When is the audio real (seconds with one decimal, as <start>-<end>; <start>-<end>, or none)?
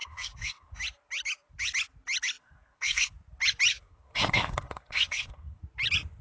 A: 0.8-2.4; 3.1-3.7; 5.6-6.2